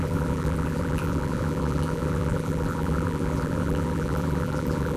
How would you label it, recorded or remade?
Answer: remade